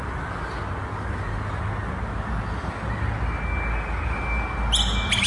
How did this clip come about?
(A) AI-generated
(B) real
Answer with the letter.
B